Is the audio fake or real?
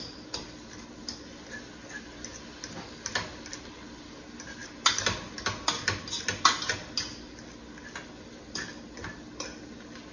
real